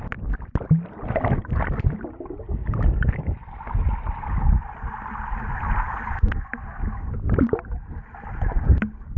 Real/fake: real